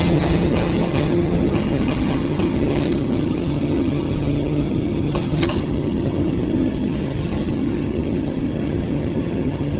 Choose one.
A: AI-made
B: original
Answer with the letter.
A